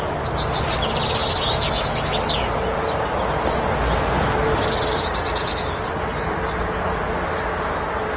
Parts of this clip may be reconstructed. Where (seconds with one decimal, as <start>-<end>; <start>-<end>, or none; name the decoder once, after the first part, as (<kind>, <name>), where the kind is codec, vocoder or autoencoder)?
1.2-2.2 (autoencoder, DAC-VAE)